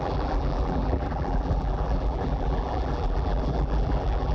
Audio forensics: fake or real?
fake